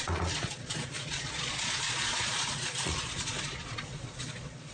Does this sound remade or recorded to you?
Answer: remade